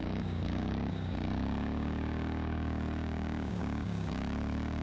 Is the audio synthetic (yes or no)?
yes